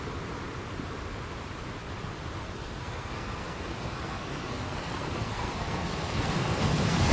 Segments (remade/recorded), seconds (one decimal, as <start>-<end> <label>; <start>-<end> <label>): 0.0-2.4 recorded; 2.4-7.1 remade